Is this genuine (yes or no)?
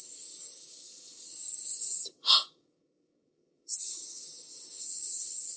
no